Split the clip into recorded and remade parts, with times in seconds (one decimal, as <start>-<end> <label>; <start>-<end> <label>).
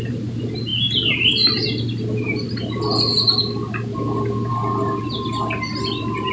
0.0-6.3 recorded